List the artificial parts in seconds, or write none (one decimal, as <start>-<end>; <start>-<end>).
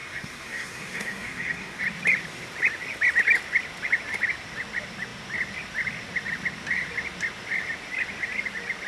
0.0-1.8